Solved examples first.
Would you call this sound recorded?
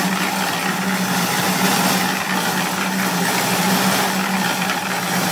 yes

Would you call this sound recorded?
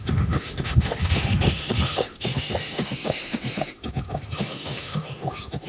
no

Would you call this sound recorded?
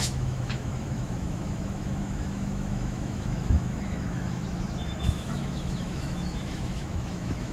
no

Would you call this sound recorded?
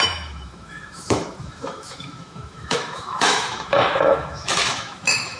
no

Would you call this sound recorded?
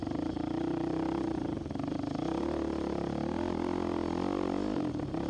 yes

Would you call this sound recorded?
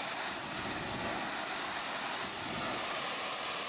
yes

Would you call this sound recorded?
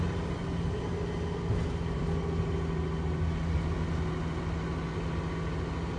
yes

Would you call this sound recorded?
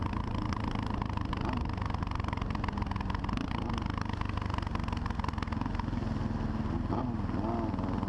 yes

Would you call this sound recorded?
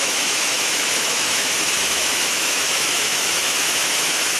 no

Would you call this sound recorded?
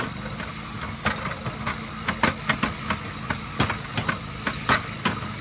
yes